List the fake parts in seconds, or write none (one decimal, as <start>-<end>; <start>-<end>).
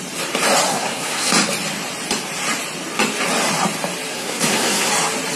0.7-1.3; 4.1-4.9